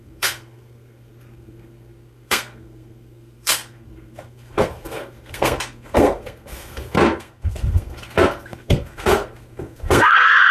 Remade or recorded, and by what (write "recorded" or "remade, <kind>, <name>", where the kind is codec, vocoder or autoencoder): remade, codec, SNAC